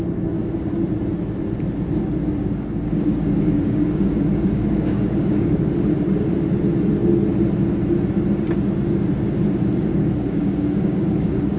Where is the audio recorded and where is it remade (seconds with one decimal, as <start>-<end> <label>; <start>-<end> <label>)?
0.0-2.4 recorded; 2.4-5.7 remade; 5.7-9.9 recorded; 9.9-11.6 remade